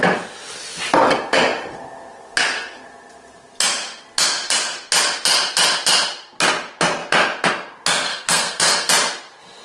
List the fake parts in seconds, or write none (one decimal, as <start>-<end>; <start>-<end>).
8.1-8.9